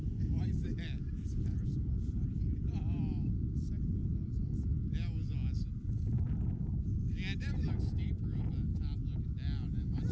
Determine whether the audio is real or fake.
fake